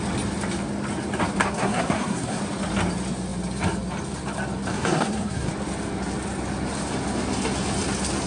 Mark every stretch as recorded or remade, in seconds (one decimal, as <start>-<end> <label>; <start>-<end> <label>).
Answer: 0.0-1.4 recorded; 1.4-2.4 remade; 2.4-4.7 recorded; 4.7-5.5 remade; 5.5-8.3 recorded